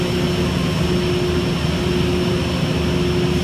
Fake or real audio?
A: real